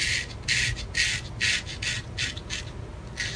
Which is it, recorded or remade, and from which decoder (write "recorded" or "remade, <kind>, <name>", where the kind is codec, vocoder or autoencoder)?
recorded